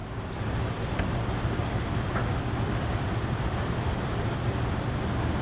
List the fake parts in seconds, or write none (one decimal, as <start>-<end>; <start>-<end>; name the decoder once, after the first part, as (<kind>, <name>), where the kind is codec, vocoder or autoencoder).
0.0-0.8 (vocoder, BigVGAN v2); 1.6-4.8